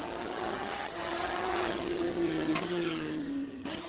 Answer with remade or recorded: remade